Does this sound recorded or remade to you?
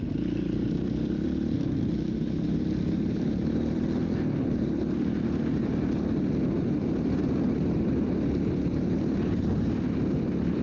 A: recorded